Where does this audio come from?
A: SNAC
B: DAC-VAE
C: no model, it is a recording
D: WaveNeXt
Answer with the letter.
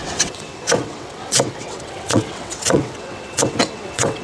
D